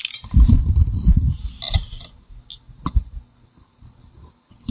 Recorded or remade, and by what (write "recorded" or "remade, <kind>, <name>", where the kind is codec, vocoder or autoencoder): recorded